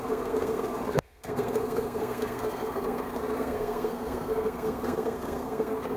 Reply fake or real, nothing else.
fake